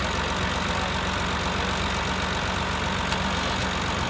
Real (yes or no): yes